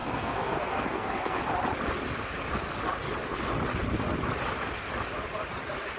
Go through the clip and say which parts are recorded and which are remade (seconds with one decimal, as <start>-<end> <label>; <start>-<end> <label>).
0.0-1.4 remade; 1.4-6.0 recorded